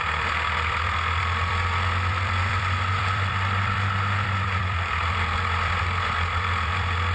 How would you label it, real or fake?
fake